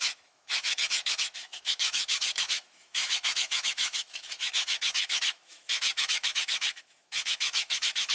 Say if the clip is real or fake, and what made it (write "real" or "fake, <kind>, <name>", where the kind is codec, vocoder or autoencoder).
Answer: fake, autoencoder, DAC-VAE